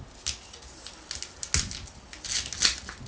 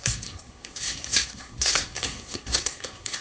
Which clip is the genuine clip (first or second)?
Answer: first